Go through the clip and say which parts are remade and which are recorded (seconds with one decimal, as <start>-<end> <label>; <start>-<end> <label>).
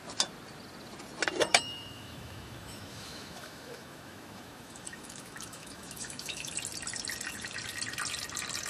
0.0-1.5 recorded; 1.5-6.5 remade; 6.5-8.7 recorded